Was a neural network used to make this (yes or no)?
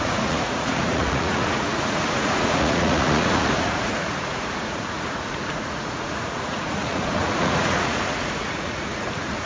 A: yes